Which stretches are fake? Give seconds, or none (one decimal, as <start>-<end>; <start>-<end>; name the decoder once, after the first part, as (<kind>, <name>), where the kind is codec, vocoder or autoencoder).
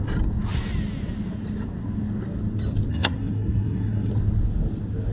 2.9-4.1 (codec, SNAC)